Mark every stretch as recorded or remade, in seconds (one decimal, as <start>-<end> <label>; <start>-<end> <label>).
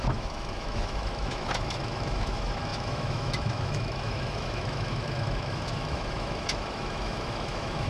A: 0.0-7.9 remade